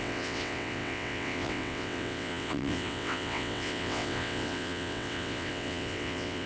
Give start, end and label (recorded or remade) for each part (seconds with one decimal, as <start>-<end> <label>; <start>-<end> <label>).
0.0-6.5 remade